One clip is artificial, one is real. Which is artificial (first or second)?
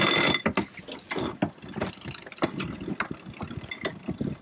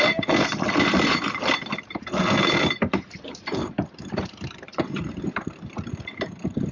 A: second